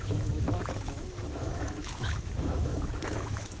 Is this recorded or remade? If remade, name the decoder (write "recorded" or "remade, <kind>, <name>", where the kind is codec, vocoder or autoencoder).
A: remade, autoencoder, DAC-VAE